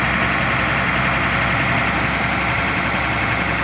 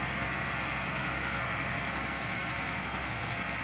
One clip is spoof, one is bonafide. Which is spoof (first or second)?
second